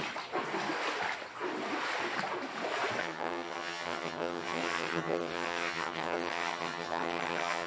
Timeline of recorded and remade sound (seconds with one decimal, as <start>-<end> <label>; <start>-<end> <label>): 0.0-3.0 recorded; 3.0-7.7 remade